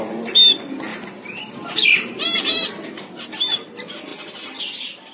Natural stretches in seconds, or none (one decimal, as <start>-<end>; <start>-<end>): 0.0-0.9; 2.9-4.1; 4.6-5.1